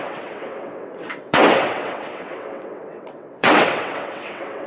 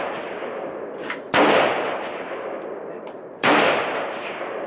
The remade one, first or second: first